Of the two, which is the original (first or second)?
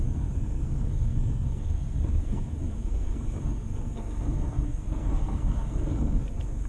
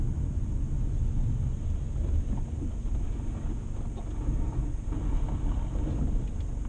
second